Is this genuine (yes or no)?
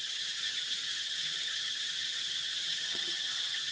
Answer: no